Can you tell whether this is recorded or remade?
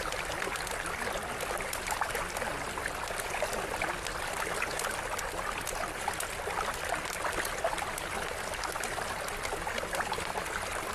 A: recorded